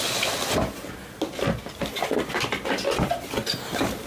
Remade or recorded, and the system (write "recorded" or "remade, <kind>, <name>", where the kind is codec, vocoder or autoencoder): recorded